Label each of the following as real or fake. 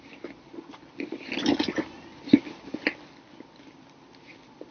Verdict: real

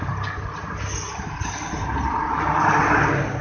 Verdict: real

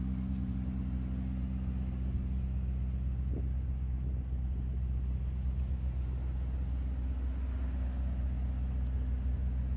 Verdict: real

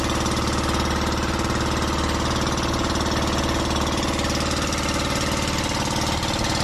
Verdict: real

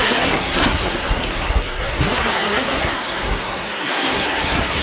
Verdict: fake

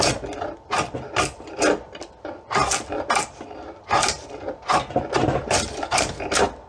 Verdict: real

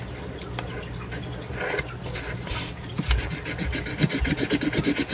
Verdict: real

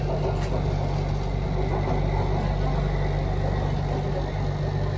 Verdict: real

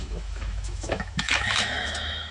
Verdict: fake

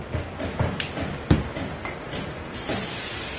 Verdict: real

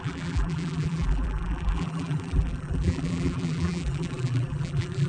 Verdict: fake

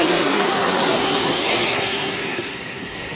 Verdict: fake